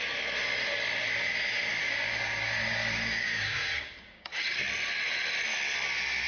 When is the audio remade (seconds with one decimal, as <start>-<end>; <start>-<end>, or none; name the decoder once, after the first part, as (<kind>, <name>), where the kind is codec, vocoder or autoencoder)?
1.8-4.4 (codec, DAC)